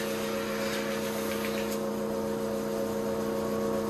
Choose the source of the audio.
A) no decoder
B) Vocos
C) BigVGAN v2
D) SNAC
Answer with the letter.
A